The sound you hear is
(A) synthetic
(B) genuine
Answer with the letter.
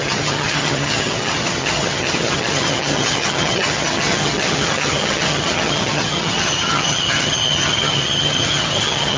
A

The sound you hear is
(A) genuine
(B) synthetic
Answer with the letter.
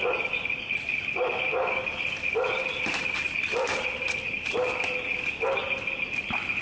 A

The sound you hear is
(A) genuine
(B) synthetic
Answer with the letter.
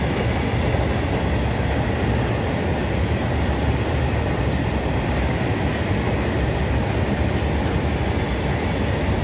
A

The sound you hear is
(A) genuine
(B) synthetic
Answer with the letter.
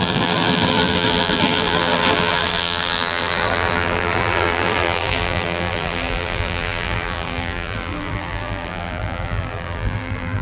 B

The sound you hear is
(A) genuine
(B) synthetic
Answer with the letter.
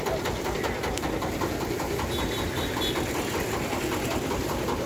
B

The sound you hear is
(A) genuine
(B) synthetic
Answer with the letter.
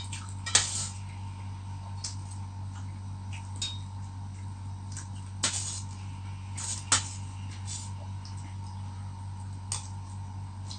A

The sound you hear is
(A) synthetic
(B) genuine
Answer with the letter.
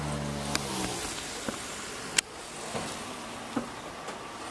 B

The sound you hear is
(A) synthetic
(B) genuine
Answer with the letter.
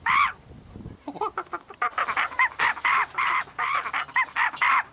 B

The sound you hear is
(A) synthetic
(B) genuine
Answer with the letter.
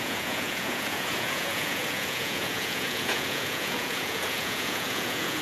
A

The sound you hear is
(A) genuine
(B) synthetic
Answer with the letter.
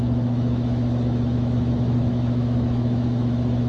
B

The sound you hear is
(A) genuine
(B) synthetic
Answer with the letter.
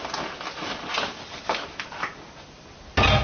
A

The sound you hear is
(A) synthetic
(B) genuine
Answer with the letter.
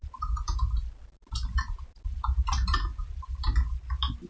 B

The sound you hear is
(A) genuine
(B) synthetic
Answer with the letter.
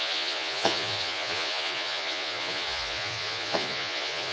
B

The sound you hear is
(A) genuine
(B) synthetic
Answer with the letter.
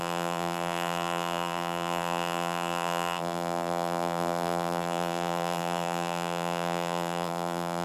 B